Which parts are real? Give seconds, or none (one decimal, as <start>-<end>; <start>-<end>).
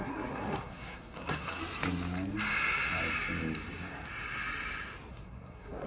1.6-5.1